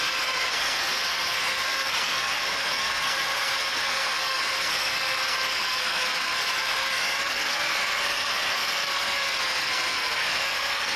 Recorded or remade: remade